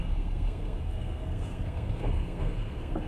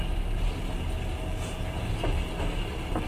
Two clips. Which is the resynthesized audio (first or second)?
first